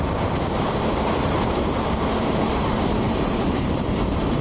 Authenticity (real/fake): fake